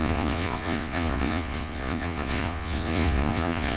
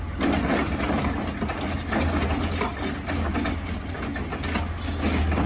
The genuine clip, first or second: second